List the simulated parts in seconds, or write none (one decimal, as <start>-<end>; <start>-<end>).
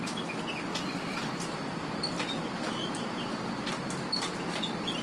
0.7-3.7